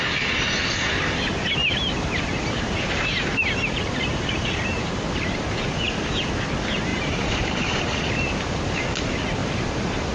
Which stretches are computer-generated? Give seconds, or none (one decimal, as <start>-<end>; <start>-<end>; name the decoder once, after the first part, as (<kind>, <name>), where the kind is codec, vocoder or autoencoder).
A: 1.6-5.6 (vocoder, BigVGAN v2); 6.9-8.8; 9.4-10.1